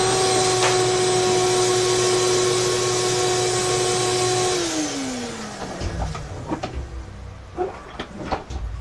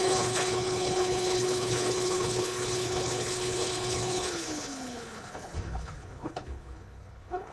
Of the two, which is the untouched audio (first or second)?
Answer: first